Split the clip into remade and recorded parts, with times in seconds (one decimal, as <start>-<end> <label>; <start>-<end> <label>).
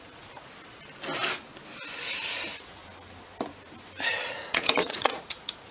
0.0-0.5 remade; 0.5-2.2 recorded; 2.2-2.8 remade; 2.8-4.1 recorded; 4.1-5.7 remade